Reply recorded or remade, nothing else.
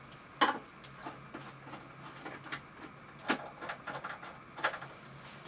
recorded